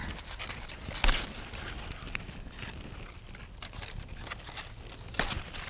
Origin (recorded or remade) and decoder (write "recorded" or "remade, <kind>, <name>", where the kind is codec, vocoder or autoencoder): recorded